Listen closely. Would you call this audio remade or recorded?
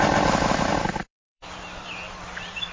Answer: remade